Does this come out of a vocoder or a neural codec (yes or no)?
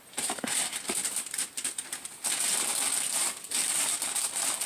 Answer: no